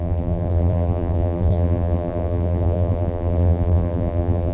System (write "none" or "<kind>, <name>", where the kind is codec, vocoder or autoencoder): vocoder, BigVGAN v2